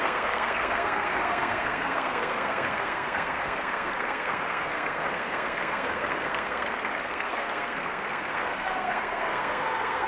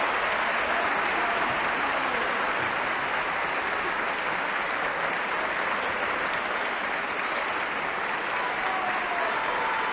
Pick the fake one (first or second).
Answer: first